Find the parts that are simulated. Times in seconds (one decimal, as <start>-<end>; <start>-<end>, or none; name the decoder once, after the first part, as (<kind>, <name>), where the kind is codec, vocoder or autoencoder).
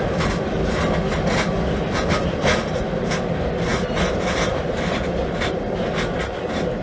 none